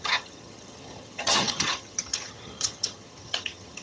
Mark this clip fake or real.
fake